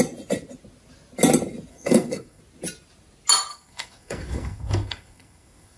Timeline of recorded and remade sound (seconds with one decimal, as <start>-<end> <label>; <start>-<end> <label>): 0.0-1.7 recorded; 1.7-2.4 remade; 2.4-3.5 recorded; 3.5-5.8 remade